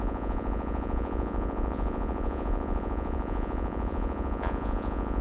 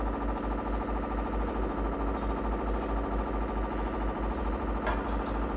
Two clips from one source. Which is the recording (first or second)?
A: second